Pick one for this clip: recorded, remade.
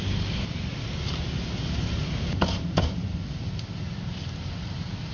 recorded